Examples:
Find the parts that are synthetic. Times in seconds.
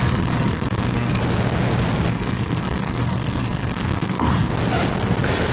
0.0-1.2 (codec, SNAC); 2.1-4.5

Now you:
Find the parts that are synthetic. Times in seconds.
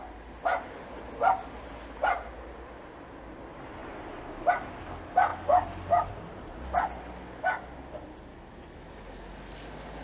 8.3-9.0 (autoencoder, DAC-VAE)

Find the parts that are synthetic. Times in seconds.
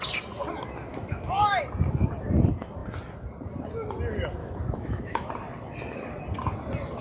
0.9-1.6 (autoencoder, DAC-VAE); 4.4-5.3